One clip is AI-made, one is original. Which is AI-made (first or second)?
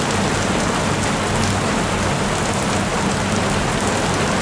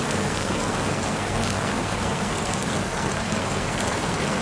second